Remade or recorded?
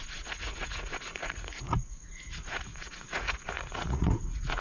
remade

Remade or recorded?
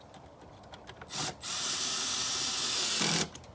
recorded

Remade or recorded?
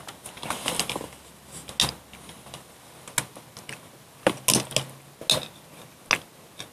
recorded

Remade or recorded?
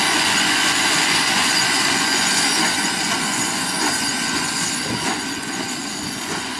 remade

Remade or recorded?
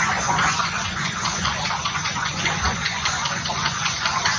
remade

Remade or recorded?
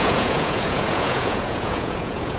remade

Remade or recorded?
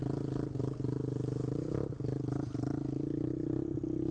recorded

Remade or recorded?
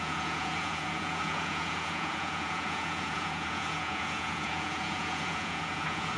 remade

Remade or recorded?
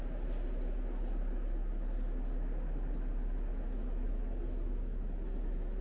recorded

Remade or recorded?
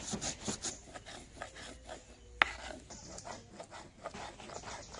recorded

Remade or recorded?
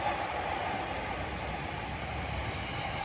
recorded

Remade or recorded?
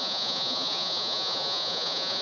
remade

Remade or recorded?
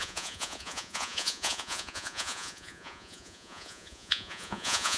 remade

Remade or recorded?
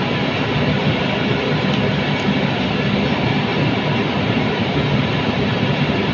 recorded